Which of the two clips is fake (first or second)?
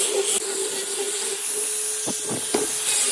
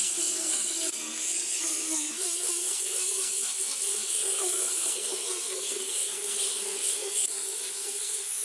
second